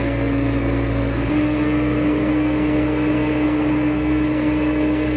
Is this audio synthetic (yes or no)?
yes